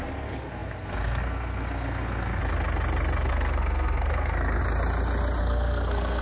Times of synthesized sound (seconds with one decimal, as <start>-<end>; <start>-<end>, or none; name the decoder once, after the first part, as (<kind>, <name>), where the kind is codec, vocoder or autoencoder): 0.0-2.4 (codec, SNAC); 3.3-4.6; 5.4-6.2